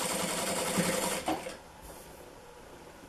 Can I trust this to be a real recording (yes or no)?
no